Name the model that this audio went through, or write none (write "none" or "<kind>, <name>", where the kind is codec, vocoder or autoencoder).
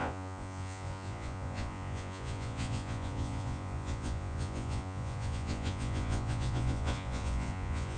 vocoder, Vocos